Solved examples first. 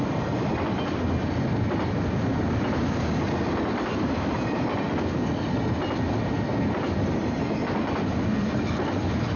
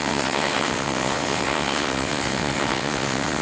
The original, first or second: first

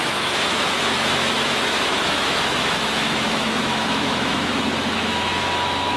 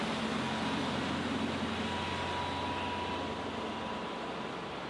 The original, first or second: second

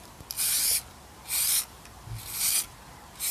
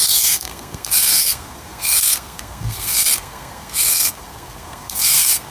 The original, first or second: first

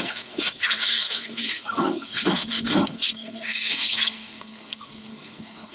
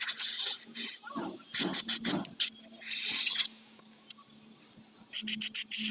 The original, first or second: second